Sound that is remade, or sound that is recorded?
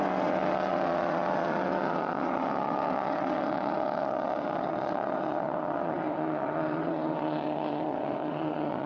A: remade